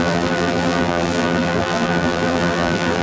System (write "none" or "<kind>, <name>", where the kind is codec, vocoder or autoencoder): vocoder, BigVGAN v2